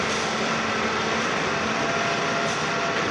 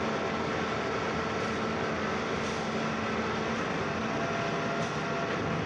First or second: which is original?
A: second